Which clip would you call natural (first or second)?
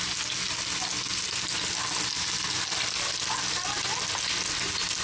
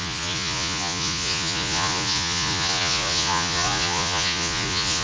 first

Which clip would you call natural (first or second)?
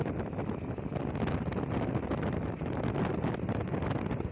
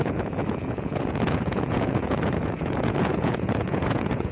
first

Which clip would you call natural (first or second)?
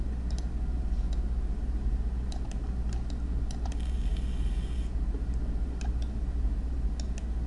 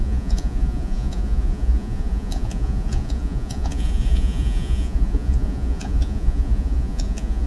first